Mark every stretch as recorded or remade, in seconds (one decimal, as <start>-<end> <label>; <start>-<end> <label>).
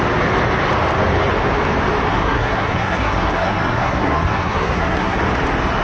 0.0-2.1 recorded; 2.1-5.2 remade; 5.2-5.8 recorded